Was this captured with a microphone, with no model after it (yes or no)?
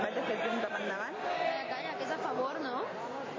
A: yes